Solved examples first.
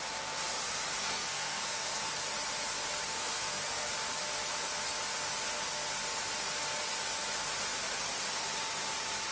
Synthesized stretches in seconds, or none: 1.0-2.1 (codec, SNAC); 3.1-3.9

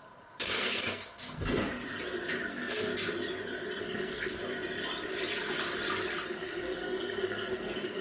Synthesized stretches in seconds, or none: 0.0-1.7 (codec, SNAC); 2.5-2.9; 3.8-4.4; 6.3-8.0

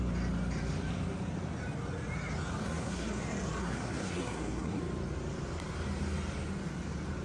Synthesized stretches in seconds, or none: 2.6-3.2 (codec, SNAC); 3.6-4.8

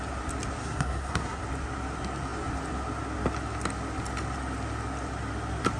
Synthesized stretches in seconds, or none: 0.6-1.4 (codec, SNAC)

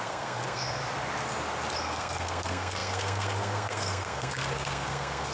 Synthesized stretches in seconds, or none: 0.0-0.8 (codec, SNAC); 1.8-5.3

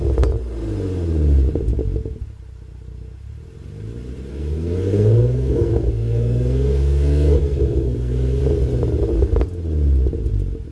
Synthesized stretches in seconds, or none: 4.3-8.4 (codec, SNAC)

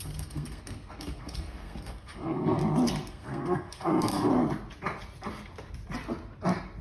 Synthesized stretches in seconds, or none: 0.0-2.6 (codec, SNAC); 3.1-4.3